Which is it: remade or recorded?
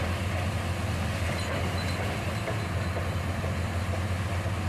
recorded